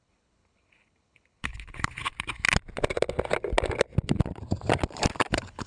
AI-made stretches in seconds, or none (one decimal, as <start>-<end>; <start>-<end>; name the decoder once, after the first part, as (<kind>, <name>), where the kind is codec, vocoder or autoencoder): 0.0-2.1 (codec, HILCodec); 5.3-5.7